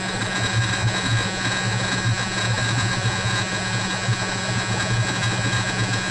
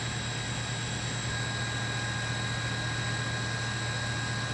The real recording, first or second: second